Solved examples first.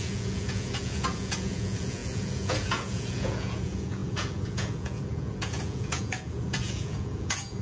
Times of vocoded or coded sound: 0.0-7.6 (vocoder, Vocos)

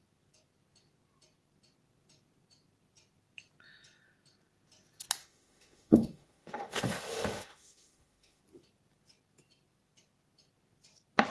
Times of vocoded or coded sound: 5.2-8.4 (autoencoder, DAC-VAE)

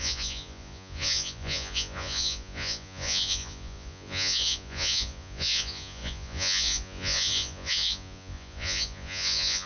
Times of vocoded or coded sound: 0.0-9.7 (vocoder, Vocos)

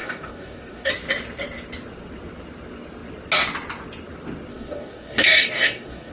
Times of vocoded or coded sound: 0.0-0.9 (codec, DAC); 4.5-6.1

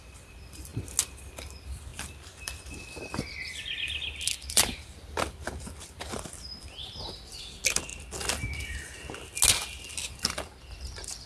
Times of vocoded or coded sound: 0.0-0.7 (vocoder, BigVGAN v2); 1.3-7.9; 9.8-11.3